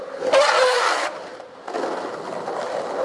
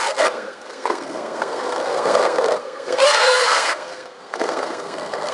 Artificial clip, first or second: second